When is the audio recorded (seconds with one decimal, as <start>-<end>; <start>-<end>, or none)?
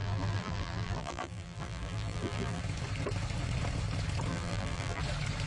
2.6-4.3; 5.0-5.5